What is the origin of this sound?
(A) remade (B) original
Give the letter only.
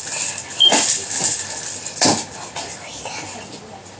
B